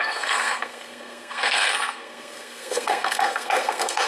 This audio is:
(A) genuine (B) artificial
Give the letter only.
B